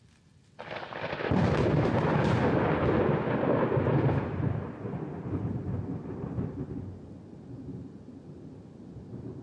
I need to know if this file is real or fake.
real